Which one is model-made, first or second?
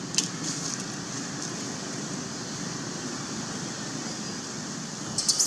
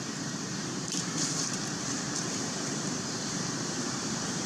second